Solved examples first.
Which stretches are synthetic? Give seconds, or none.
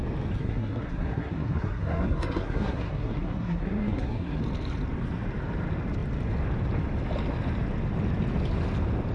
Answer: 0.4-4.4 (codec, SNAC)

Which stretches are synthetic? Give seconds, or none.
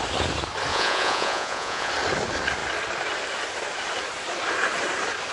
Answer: 0.7-1.9 (vocoder, Vocos)